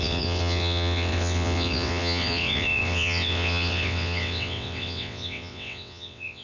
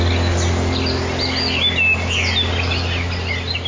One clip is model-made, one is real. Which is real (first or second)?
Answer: second